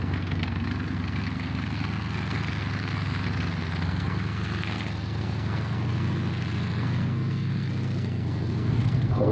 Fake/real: fake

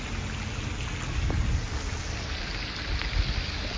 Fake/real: real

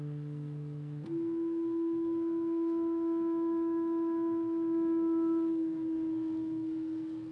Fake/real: fake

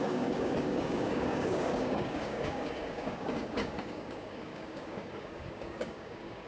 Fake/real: fake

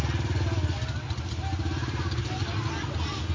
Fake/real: real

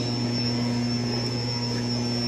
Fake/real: real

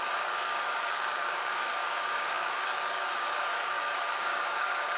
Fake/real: fake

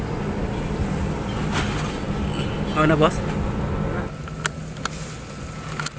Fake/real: real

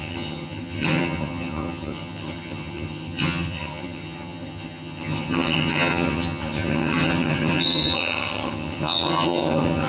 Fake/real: fake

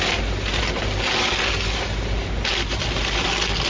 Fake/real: real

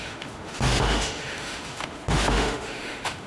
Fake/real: fake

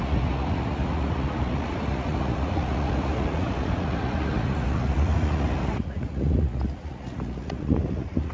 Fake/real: fake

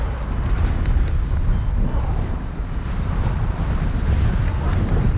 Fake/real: real